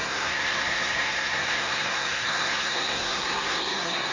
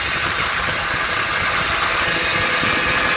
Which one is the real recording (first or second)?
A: second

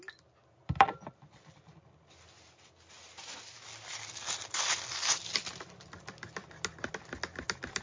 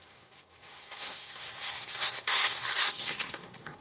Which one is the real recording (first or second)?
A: first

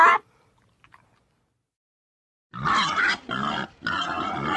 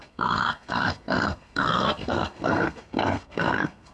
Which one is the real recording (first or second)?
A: first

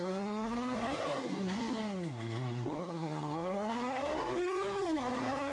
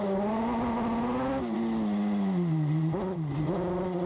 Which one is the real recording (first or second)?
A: second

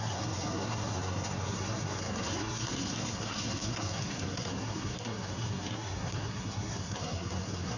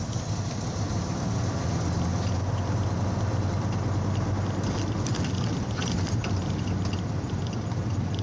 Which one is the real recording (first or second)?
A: second